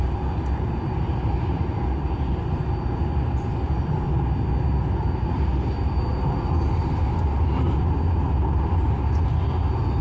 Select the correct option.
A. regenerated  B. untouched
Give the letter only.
B